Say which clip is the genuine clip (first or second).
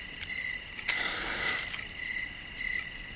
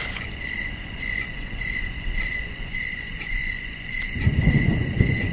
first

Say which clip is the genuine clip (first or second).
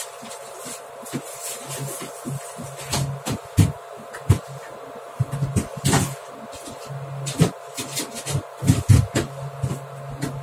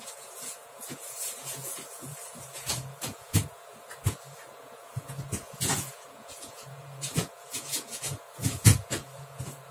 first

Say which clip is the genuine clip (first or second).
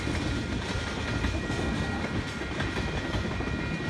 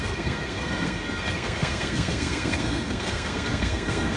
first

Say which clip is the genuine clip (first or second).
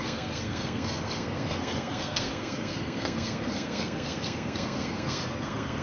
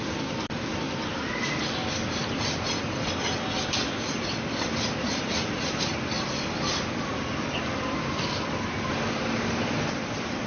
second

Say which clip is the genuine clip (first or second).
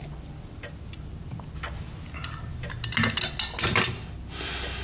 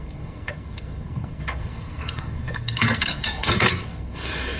first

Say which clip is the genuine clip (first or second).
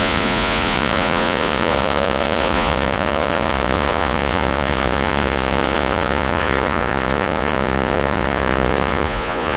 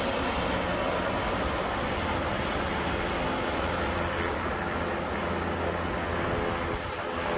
second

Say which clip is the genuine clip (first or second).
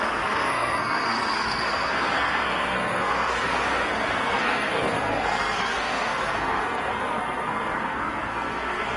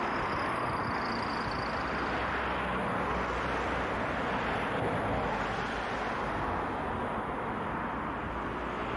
second